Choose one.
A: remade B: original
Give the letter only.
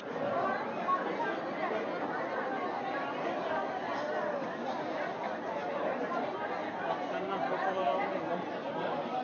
B